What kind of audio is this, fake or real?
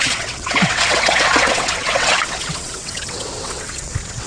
fake